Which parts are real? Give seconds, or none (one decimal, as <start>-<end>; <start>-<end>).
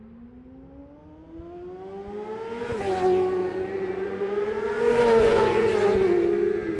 0.0-3.4; 5.7-6.8